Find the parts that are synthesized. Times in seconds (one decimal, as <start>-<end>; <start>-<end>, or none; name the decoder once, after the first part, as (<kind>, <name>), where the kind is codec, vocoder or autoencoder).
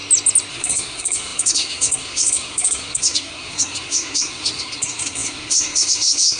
0.5-6.4 (codec, SNAC)